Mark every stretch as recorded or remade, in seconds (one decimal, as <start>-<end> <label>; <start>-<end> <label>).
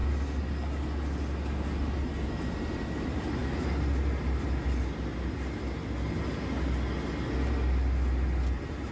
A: 0.0-8.9 recorded